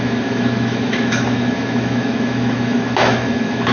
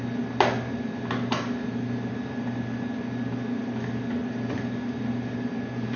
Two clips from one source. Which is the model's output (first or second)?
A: first